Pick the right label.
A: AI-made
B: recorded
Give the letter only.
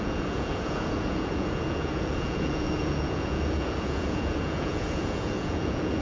A